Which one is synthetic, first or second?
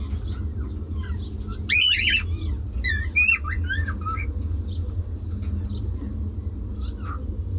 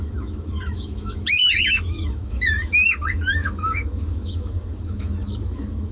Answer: second